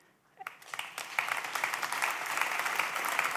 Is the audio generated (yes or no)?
no